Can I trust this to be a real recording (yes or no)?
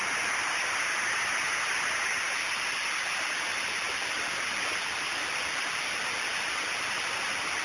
yes